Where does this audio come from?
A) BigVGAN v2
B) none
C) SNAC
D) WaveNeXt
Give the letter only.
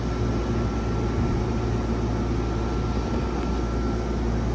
B